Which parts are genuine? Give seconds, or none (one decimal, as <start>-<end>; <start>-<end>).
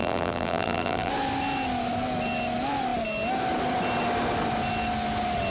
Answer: 1.1-5.5